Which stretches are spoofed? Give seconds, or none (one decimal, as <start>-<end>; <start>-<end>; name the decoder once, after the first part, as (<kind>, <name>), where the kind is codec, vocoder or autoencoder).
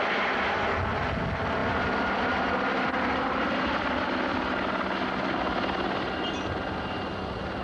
none